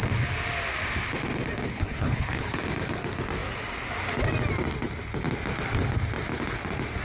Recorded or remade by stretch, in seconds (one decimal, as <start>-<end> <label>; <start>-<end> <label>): 0.0-1.7 recorded; 1.7-2.6 remade; 2.6-7.0 recorded